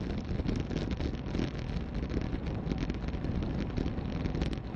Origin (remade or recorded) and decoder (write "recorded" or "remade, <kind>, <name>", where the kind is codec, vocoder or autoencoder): recorded